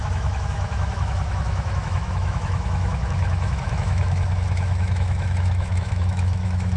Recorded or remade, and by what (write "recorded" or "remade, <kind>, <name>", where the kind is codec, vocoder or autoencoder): remade, autoencoder, DAC-VAE